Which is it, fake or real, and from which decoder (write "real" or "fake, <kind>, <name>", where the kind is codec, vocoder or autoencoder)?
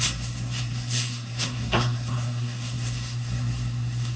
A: fake, codec, SNAC